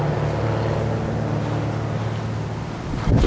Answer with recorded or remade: recorded